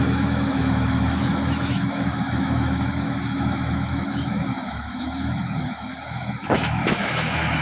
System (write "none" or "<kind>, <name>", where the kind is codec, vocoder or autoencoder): autoencoder, DAC-VAE